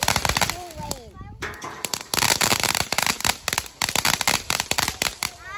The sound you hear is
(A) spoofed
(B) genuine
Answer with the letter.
A